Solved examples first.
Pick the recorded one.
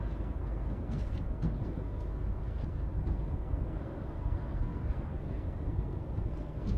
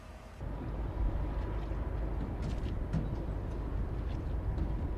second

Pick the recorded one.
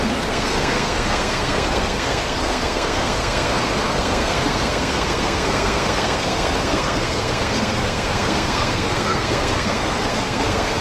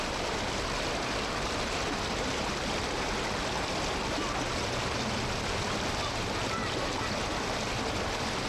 second